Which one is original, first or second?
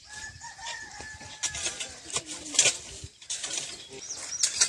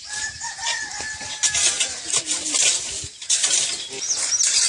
second